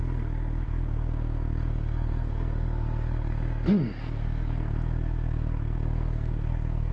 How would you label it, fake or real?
fake